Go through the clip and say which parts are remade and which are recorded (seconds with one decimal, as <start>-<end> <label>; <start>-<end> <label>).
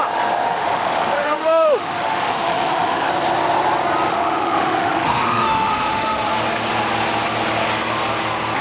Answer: 0.0-0.5 recorded; 0.5-3.1 remade; 3.1-4.1 recorded; 4.1-6.3 remade; 6.3-8.6 recorded